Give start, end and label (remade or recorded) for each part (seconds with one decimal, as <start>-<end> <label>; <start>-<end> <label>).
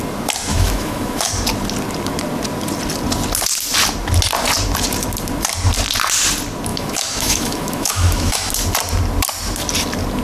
0.0-0.5 recorded; 0.5-1.3 remade; 1.3-6.7 recorded; 6.7-8.5 remade; 8.5-10.2 recorded